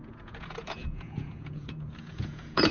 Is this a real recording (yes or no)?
no